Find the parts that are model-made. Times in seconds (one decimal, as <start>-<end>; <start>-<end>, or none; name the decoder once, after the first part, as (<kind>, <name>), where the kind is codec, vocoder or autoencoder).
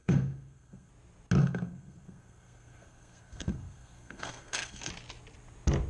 0.0-0.9 (codec, SNAC); 1.4-4.9